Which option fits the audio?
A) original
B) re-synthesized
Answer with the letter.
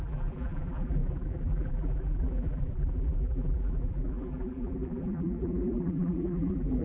B